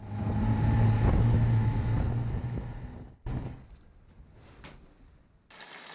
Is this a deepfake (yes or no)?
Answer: no